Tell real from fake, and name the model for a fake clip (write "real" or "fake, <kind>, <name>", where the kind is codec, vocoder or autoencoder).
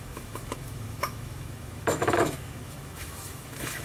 fake, autoencoder, DAC-VAE